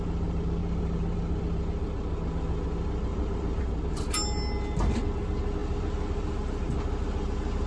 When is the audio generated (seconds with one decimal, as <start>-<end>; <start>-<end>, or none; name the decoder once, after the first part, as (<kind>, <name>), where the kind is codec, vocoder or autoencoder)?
0.6-1.4 (vocoder, BigVGAN v2); 3.1-3.6